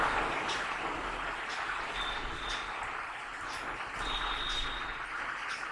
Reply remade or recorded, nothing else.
recorded